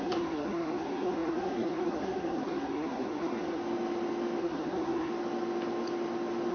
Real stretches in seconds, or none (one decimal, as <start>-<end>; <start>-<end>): 3.6-4.4; 5.1-6.5